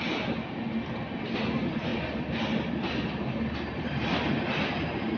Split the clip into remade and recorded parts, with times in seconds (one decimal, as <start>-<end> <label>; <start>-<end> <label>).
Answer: 0.0-5.2 recorded

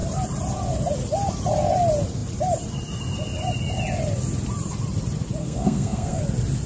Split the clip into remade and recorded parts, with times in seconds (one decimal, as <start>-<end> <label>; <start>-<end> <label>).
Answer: 0.0-5.4 recorded; 5.4-6.2 remade; 6.2-6.7 recorded

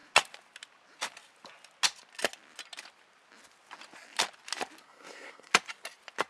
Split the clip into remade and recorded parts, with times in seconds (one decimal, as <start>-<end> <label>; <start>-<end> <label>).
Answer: 0.0-4.8 recorded; 4.8-5.5 remade; 5.5-6.3 recorded

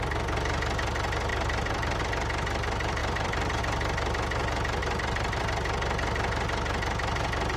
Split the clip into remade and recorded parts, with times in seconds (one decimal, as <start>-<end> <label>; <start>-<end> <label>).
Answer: 0.0-1.3 recorded; 1.3-2.0 remade; 2.0-3.0 recorded; 3.0-3.6 remade; 3.6-4.8 recorded; 4.8-5.4 remade; 5.4-7.6 recorded

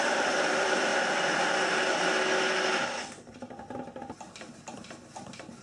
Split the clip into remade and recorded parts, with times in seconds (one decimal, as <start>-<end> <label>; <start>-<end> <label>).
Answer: 0.0-0.9 remade; 0.9-4.3 recorded; 4.3-5.6 remade

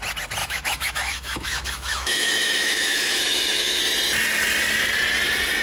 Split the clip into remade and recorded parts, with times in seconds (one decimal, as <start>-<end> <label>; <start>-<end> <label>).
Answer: 0.0-0.4 recorded; 0.4-3.8 remade; 3.8-5.6 recorded

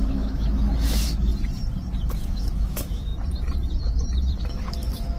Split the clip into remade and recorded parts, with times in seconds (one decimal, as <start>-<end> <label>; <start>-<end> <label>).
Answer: 0.0-1.3 remade; 1.3-2.1 recorded; 2.1-3.1 remade; 3.1-4.4 recorded; 4.4-5.2 remade

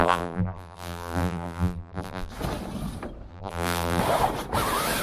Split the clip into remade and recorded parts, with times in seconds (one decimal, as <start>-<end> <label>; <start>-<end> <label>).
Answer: 0.0-2.3 remade; 2.3-3.3 recorded; 3.3-4.0 remade; 4.0-5.0 recorded